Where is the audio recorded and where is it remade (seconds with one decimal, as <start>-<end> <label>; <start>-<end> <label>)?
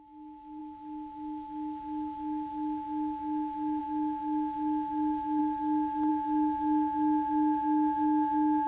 0.0-5.4 remade; 5.4-6.1 recorded; 6.1-8.7 remade